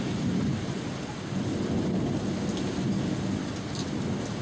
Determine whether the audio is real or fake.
real